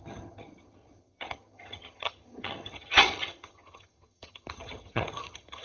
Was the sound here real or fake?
fake